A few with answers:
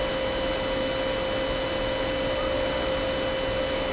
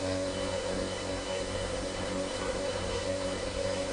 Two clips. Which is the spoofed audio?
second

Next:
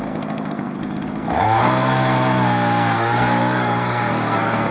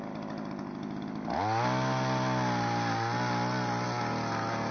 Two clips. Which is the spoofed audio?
first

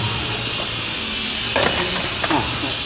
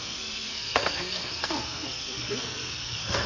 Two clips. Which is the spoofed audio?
second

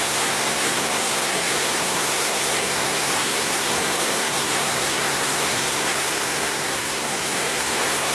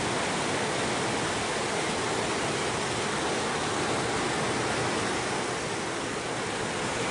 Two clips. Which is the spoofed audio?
first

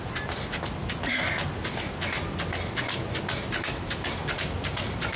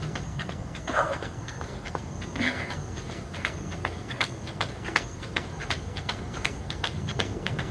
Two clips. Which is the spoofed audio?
second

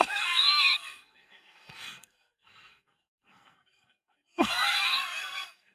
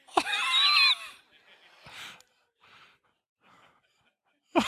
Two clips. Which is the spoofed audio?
first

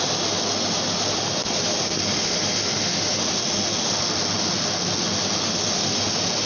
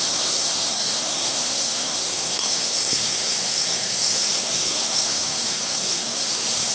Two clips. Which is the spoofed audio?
second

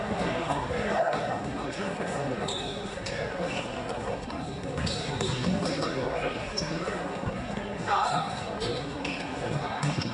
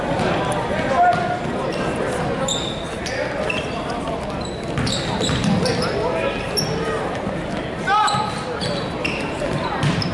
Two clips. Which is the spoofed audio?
first